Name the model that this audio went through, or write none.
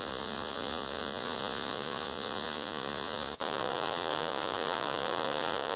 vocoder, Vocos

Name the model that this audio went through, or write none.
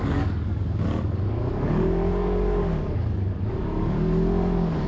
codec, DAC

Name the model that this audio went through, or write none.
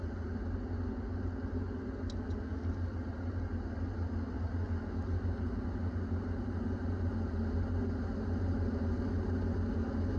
none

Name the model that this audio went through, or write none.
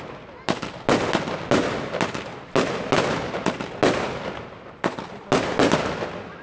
none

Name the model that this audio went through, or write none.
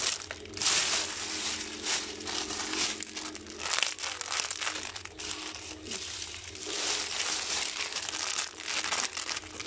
none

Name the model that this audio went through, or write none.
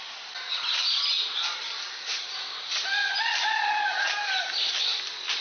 none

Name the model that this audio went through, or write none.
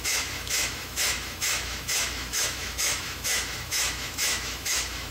autoencoder, DAC-VAE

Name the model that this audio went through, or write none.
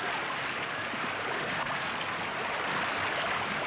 none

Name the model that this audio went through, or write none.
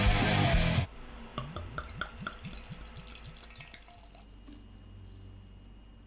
none